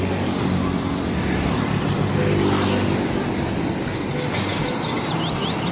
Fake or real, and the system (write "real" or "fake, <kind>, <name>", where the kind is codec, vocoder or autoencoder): real